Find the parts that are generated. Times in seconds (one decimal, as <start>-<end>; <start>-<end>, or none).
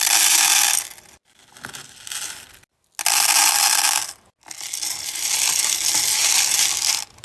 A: none